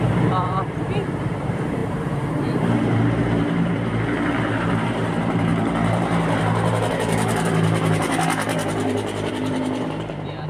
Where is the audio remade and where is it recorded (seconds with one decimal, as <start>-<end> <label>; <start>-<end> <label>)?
0.0-10.5 remade